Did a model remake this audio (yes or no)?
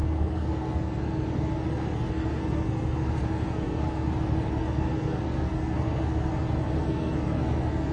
yes